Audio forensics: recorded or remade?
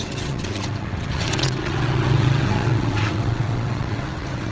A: remade